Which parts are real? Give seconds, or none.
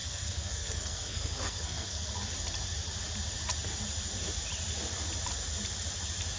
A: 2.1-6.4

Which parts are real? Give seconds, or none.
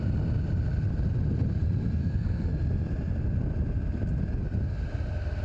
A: 0.0-2.0; 2.5-5.4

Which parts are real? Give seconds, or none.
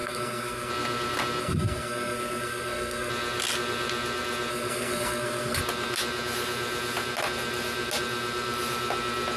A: 0.7-1.4; 3.1-4.5; 5.6-9.4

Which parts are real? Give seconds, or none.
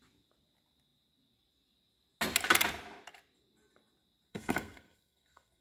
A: 0.0-4.3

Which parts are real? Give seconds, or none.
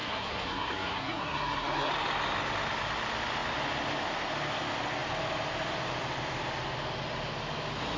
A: 1.9-8.0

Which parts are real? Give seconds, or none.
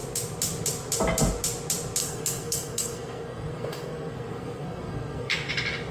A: 0.0-2.0; 5.5-5.9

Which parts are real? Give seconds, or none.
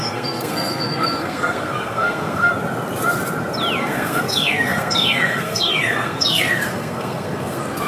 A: 2.5-3.8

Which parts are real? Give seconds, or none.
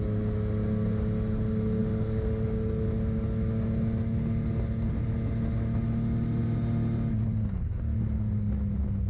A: 0.0-9.1